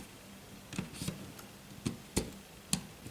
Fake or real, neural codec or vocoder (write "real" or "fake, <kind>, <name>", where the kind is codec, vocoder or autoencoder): real